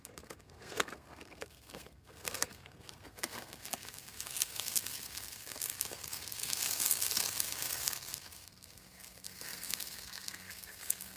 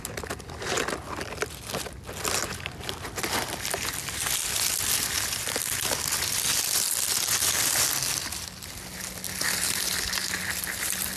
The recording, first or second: second